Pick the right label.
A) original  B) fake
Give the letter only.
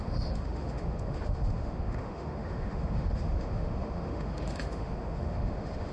B